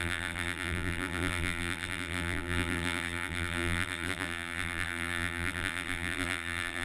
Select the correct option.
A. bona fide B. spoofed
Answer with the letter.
B